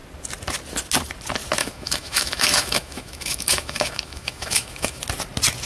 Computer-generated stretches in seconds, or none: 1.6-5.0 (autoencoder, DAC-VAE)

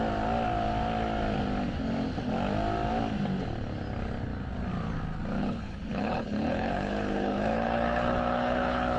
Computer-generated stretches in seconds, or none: 5.4-9.0 (codec, HILCodec)